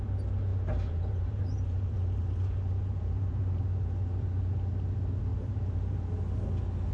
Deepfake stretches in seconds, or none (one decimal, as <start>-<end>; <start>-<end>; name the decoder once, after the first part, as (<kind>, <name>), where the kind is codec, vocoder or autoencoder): 0.5-3.6 (vocoder, BigVGAN v2); 5.3-6.1